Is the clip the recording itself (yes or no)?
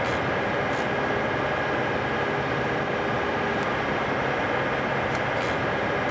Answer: yes